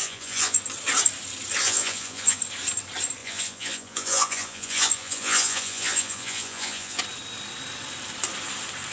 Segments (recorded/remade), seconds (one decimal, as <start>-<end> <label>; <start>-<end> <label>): 0.0-0.6 remade; 0.6-1.6 recorded; 1.6-2.4 remade; 2.4-3.2 recorded; 3.2-7.0 remade; 7.0-8.9 recorded